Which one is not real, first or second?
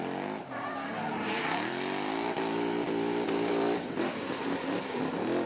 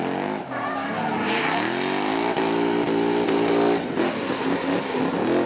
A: first